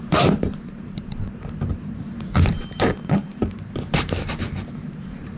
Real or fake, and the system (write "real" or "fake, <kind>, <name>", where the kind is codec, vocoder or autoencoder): fake, vocoder, BigVGAN v2